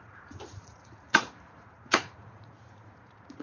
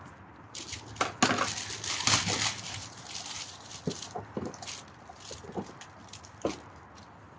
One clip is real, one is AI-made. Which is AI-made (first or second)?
first